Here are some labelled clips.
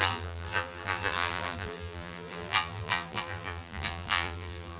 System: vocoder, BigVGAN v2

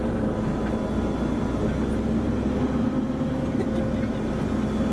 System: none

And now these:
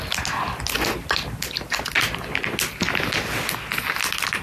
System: none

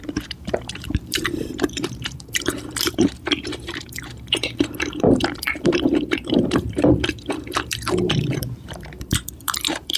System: vocoder, BigVGAN v2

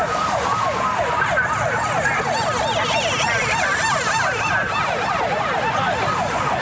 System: vocoder, BigVGAN v2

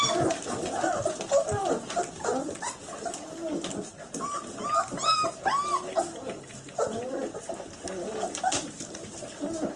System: none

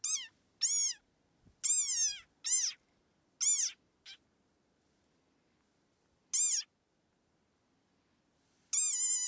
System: none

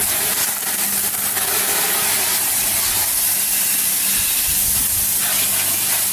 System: none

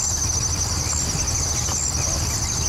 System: none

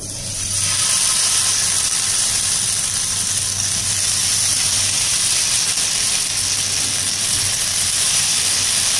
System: vocoder, BigVGAN v2